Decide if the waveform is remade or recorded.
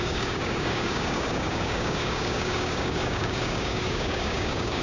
remade